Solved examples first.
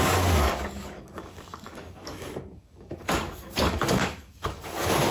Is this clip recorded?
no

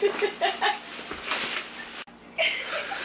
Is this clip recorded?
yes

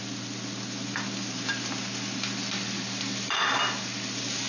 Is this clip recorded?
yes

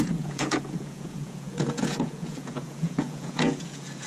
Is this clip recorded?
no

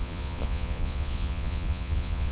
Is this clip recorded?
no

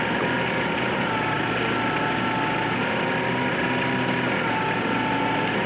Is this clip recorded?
yes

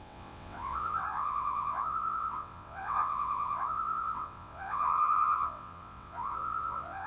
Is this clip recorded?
no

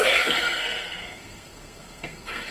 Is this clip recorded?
no